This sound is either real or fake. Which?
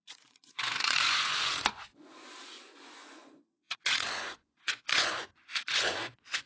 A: fake